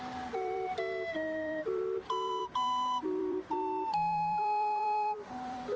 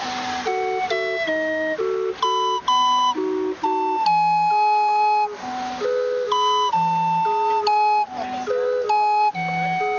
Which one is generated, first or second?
first